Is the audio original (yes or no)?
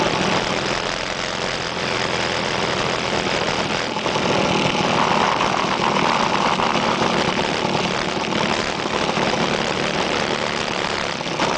yes